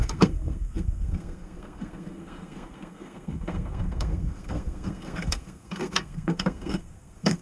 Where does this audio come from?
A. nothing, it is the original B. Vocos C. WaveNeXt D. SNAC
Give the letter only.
D